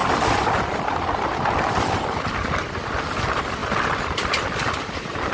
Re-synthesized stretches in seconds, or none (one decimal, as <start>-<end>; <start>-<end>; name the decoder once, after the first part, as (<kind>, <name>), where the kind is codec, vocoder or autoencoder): 0.0-1.1 (vocoder, BigVGAN v2); 3.6-4.6

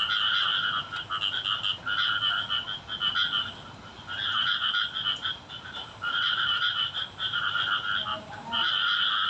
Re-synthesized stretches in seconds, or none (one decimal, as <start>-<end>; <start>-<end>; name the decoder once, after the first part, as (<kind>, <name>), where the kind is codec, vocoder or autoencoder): 5.2-7.4 (vocoder, BigVGAN v2); 8.1-8.7

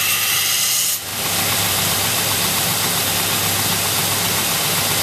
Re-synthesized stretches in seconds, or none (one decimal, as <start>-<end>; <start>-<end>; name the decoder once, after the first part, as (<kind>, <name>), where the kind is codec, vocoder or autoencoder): 1.1-3.1 (vocoder, BigVGAN v2)

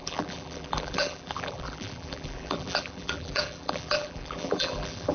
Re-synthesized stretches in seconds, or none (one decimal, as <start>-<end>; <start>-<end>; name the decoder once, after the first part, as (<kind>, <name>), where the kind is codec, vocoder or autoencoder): 0.0-5.1 (vocoder, BigVGAN v2)

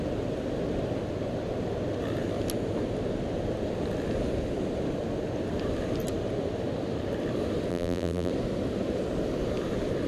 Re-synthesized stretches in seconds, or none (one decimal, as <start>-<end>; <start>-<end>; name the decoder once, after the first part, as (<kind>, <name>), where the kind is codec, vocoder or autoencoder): 7.7-8.3 (vocoder, BigVGAN v2)

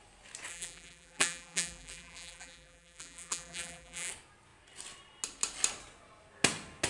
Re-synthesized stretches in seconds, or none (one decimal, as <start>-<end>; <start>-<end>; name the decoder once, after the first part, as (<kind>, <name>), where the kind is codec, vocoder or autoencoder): 0.5-4.1 (vocoder, BigVGAN v2)